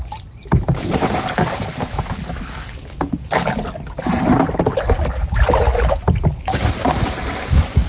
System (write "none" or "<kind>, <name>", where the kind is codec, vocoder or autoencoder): none